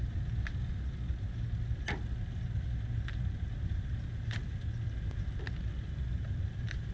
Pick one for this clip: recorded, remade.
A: recorded